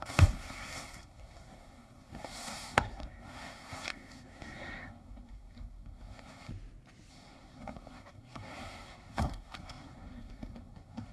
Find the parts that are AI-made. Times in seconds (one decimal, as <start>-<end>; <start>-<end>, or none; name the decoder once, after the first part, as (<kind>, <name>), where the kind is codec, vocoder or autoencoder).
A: 0.0-6.5 (codec, SNAC); 7.1-11.1